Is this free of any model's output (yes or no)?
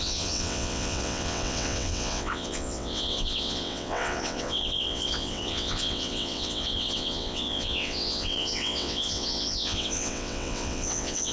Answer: no